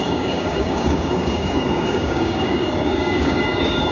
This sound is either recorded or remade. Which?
remade